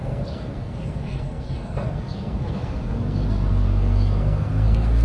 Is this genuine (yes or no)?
no